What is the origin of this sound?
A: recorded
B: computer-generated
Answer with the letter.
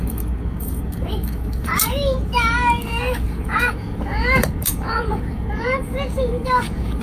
B